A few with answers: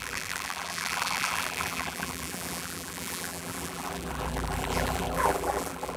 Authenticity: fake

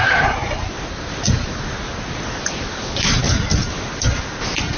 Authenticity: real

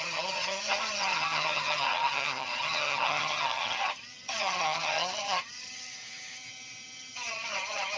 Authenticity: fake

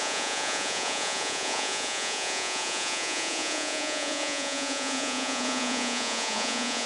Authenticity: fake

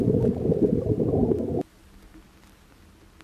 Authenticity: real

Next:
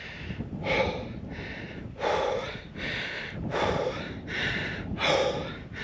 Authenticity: real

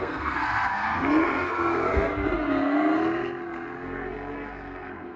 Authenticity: fake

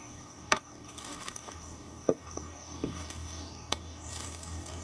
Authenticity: fake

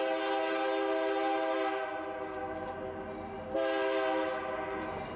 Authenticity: real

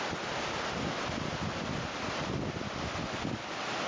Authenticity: real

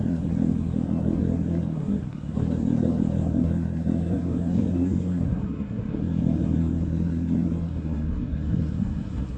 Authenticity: fake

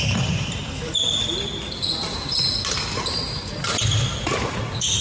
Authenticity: real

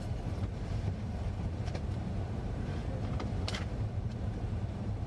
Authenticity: fake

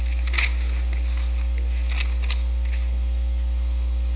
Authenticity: real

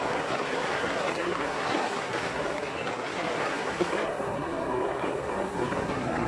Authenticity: fake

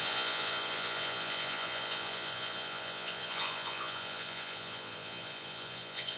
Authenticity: fake